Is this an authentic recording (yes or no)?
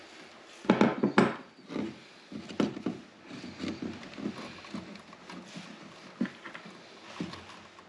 yes